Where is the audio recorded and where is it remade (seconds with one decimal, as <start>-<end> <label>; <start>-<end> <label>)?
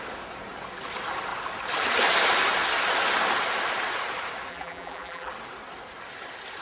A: 0.0-4.5 recorded; 4.5-5.3 remade; 5.3-6.6 recorded